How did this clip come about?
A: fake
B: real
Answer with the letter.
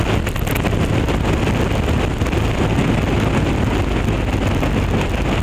B